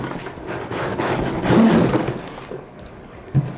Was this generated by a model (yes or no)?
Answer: yes